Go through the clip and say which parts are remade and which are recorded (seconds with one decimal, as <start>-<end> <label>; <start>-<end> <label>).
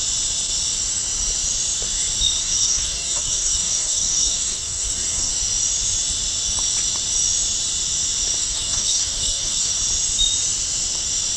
0.0-2.4 recorded; 2.4-5.3 remade; 5.3-8.4 recorded; 8.4-9.7 remade; 9.7-11.4 recorded